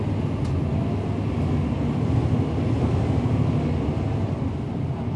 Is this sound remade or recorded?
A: recorded